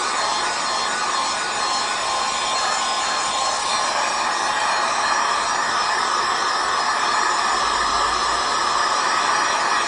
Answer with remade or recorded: remade